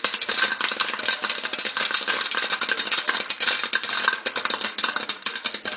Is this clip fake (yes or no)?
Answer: no